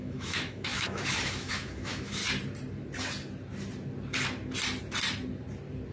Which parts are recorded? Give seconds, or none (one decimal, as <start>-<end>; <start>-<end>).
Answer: 2.2-5.9